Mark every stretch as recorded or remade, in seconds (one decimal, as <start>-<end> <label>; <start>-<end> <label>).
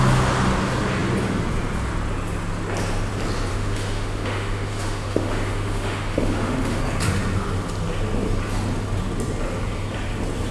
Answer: 0.0-3.5 recorded; 3.5-6.8 remade; 6.8-10.5 recorded